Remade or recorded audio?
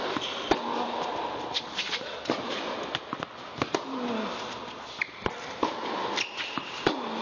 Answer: recorded